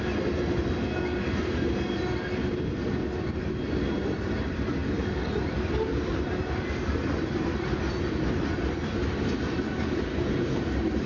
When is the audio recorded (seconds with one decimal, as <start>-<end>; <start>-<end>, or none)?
0.0-11.1